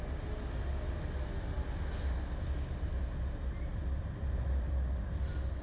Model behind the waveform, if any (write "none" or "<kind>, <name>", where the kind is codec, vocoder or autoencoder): none